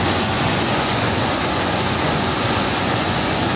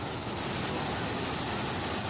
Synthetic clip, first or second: first